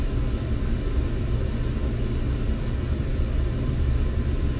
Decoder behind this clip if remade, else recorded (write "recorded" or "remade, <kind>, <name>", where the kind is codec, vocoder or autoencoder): recorded